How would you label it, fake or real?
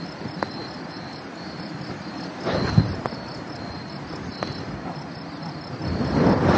real